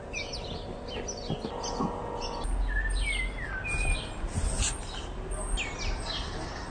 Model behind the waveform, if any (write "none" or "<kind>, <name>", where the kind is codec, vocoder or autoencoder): none